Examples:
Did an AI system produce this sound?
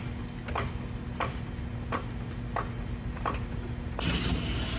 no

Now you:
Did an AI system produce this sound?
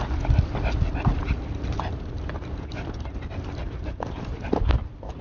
no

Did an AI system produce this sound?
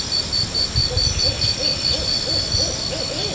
no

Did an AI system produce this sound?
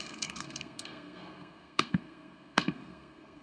yes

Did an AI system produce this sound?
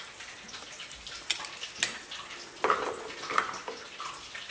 no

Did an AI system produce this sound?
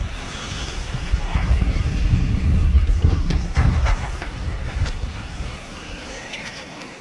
yes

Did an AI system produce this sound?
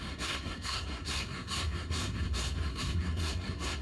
yes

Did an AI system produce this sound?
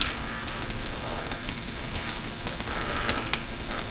yes